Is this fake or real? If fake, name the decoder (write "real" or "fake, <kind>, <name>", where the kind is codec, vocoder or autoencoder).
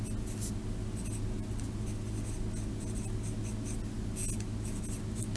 real